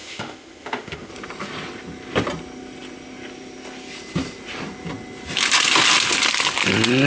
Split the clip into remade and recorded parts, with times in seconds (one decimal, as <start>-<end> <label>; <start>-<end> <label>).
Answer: 0.0-1.1 remade; 1.1-7.1 recorded